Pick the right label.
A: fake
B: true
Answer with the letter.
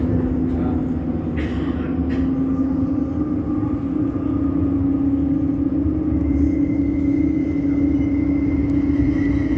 B